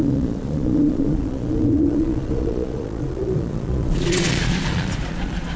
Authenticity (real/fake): fake